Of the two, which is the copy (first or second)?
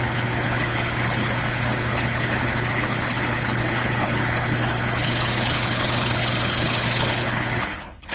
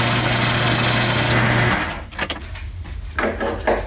first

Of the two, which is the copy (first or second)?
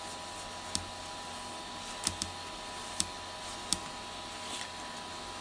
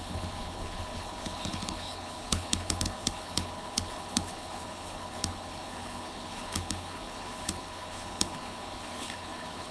second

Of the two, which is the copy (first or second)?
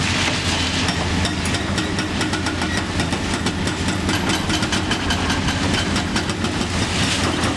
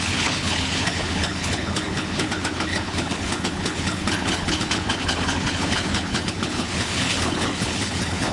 second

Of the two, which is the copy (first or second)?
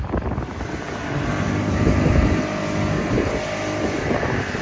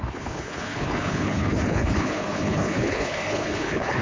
second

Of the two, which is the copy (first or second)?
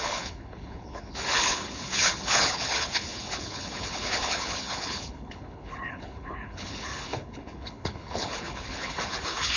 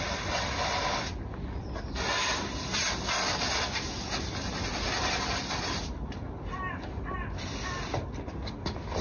first